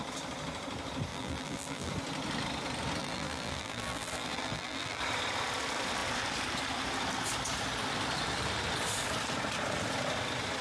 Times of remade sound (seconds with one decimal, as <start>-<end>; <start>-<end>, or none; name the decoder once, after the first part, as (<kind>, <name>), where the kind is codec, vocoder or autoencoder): 1.1-1.9 (vocoder, BigVGAN v2); 3.0-5.0

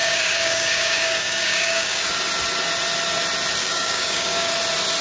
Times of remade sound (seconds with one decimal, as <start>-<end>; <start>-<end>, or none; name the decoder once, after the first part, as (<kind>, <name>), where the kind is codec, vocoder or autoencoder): 0.0-2.1 (codec, DAC); 3.6-4.5

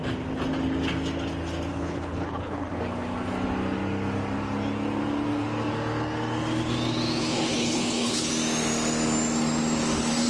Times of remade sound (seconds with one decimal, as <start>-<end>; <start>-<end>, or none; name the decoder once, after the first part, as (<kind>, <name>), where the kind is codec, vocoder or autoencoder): 1.7-2.8 (codec, HILCodec); 7.2-8.3

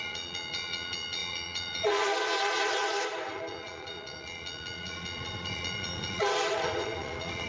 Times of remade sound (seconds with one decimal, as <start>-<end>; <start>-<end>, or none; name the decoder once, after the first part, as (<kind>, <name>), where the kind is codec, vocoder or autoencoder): 0.0-7.5 (vocoder, Vocos)

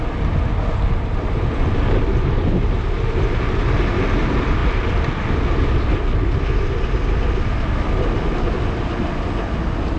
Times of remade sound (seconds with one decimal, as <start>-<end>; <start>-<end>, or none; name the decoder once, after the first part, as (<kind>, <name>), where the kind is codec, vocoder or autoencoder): none

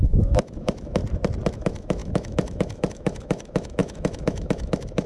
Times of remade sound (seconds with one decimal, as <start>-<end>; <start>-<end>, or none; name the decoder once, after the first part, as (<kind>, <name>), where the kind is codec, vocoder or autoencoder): 0.0-1.0 (autoencoder, DAC-VAE); 1.5-5.1

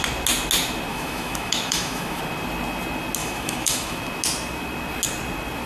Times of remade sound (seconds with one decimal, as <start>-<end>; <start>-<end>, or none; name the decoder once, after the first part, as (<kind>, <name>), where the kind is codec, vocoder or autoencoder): 0.9-2.2 (autoencoder, DAC-VAE); 3.2-4.0

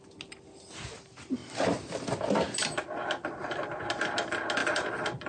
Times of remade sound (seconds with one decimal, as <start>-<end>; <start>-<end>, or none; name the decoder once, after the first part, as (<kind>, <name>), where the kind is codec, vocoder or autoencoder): 4.6-5.3 (vocoder, BigVGAN v2)